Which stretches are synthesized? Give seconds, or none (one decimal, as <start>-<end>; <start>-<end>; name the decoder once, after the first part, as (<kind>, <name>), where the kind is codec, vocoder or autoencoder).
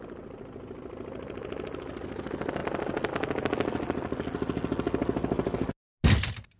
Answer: none